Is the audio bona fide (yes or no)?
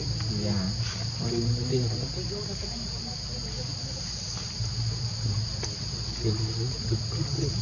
yes